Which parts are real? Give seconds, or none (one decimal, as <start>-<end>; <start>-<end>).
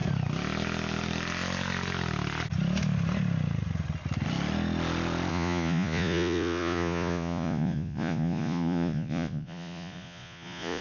0.0-5.3